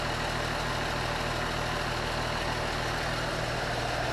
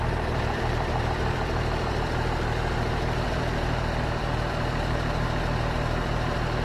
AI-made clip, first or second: second